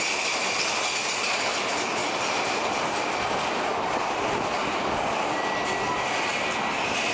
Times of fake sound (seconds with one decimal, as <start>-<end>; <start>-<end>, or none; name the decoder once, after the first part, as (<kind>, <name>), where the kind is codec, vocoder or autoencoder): none